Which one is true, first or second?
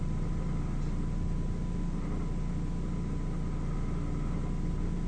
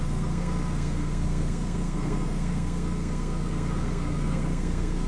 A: first